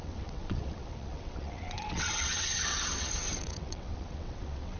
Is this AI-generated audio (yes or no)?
yes